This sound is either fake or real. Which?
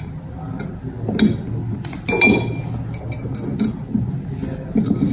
real